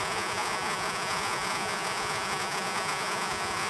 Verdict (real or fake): fake